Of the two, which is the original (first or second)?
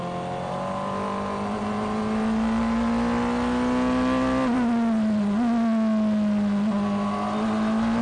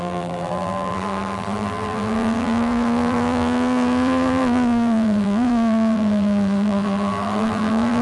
first